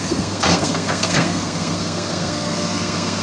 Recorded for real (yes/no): no